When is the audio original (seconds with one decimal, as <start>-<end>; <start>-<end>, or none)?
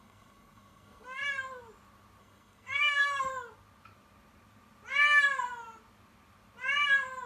1.2-2.2; 3.3-7.3